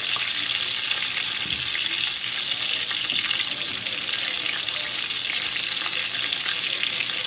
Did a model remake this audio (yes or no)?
no